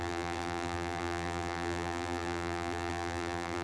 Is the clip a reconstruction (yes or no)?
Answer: yes